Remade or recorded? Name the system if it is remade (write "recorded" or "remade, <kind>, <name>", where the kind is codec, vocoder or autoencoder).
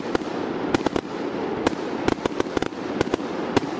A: recorded